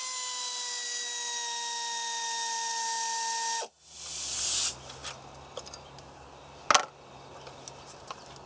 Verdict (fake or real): real